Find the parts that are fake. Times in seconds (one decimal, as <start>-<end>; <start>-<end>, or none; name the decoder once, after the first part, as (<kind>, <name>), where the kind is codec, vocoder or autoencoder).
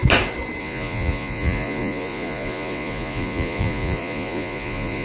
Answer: 0.6-5.0 (vocoder, Vocos)